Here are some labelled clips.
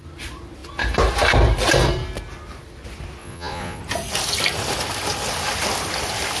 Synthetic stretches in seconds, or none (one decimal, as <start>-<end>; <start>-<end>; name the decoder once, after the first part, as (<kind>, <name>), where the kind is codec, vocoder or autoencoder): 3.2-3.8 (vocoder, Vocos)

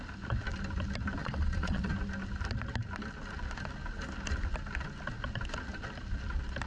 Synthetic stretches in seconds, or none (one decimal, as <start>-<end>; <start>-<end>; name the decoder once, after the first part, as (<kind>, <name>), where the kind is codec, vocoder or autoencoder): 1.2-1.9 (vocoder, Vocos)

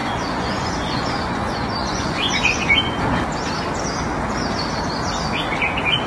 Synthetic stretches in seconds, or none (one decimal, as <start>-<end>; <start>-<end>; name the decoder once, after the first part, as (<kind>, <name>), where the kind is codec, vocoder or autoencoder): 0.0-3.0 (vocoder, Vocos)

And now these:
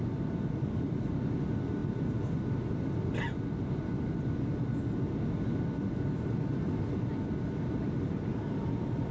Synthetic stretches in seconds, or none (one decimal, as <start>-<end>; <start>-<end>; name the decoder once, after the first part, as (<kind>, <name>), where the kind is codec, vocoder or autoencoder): none

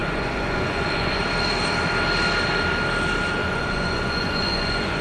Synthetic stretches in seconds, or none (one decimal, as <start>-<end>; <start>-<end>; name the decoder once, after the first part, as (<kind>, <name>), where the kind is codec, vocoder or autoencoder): 0.0-1.2 (vocoder, Vocos); 3.4-5.0

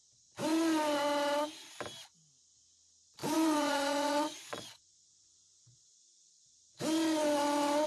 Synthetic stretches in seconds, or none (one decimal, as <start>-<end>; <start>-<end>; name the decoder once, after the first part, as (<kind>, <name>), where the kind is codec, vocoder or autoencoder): 3.2-6.3 (vocoder, Vocos)

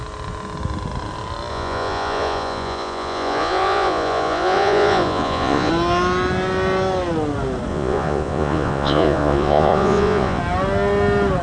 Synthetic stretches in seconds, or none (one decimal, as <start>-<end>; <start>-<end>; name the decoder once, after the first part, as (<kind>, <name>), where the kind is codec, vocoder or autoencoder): 1.5-5.7 (vocoder, Vocos); 7.7-10.4

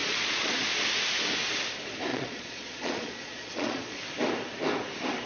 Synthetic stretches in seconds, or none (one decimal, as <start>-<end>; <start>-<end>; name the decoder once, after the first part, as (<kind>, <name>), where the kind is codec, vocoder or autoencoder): 0.0-0.8 (vocoder, Vocos); 2.1-4.0